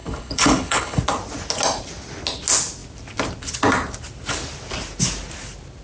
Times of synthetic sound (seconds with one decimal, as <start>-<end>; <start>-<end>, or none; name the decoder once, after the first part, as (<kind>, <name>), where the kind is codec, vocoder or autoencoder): 0.0-1.0 (codec, HILCodec)